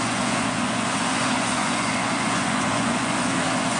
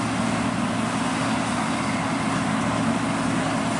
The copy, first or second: first